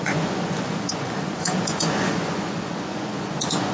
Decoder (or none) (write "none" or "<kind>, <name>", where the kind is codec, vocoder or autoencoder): vocoder, Vocos